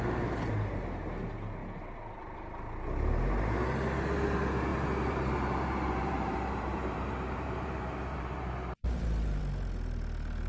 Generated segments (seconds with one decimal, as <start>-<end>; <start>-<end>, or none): 4.7-9.4